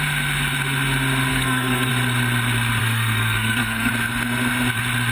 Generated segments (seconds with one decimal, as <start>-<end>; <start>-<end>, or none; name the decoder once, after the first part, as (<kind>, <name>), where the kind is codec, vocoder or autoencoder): 1.3-1.9 (codec, SNAC); 2.8-3.9

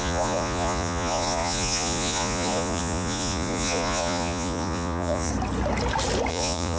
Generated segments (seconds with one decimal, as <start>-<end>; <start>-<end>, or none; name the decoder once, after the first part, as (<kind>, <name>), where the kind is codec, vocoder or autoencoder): 0.0-5.3 (vocoder, Vocos); 6.3-6.8

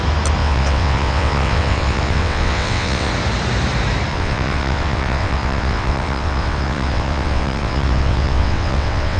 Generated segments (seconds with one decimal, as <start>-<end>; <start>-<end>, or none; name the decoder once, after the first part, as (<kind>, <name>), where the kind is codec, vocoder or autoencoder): 0.4-3.1 (vocoder, WaveNeXt); 4.1-9.2

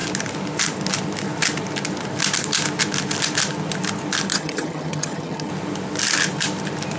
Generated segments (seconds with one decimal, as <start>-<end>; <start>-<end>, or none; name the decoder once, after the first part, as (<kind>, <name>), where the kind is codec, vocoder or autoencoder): 4.3-5.5 (vocoder, HiFi-GAN)

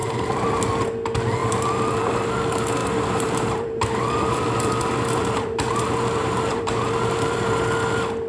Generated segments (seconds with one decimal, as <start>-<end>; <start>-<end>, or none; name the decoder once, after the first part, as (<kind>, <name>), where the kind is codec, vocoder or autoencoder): 0.0-0.5 (vocoder, BigVGAN v2); 1.4-2.4; 2.8-7.5

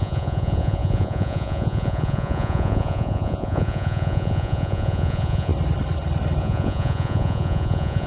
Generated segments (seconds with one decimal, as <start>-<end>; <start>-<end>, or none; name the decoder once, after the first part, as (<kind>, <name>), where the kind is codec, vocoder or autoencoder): 0.0-5.5 (vocoder, Vocos); 6.4-8.1

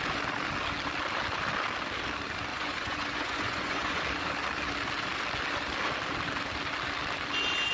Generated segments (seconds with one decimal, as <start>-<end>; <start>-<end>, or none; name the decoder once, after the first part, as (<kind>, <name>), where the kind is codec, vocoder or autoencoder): 2.5-4.0 (vocoder, Vocos)

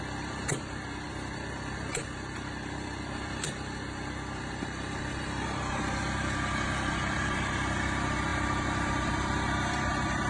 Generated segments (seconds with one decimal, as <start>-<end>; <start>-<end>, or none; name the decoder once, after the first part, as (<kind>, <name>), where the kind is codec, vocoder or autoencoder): 0.0-10.3 (vocoder, BigVGAN v2)